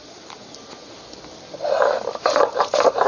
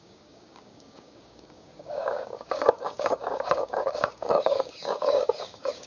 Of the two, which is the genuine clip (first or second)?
first